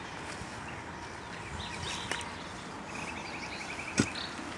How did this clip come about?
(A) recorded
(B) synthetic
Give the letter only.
A